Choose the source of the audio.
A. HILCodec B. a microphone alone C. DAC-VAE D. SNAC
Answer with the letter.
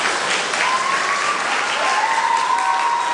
B